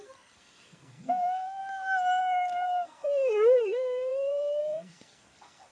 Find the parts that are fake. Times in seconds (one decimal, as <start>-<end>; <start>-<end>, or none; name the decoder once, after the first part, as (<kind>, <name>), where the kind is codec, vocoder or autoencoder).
0.0-1.6 (codec, SNAC); 2.2-5.7